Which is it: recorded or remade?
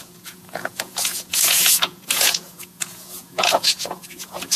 remade